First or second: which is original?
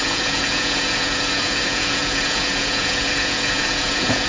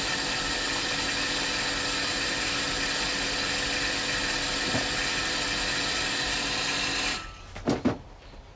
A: second